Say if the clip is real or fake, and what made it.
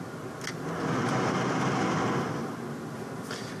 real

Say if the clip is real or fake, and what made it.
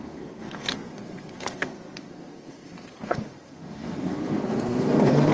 fake, codec, SNAC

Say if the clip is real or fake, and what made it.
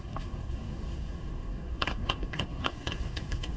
fake, codec, SNAC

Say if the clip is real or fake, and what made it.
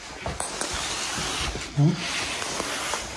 real